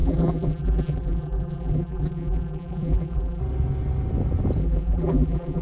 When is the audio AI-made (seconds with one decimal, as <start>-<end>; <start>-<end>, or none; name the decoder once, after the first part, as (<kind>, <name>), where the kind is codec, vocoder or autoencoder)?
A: 0.0-3.4 (vocoder, BigVGAN v2); 4.6-5.6